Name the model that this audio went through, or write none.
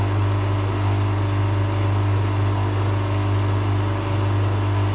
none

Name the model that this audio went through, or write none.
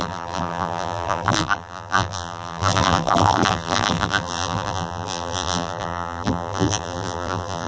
vocoder, BigVGAN v2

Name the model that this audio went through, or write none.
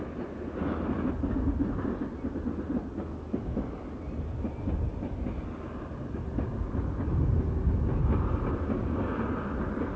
none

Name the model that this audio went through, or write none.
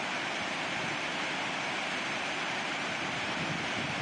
none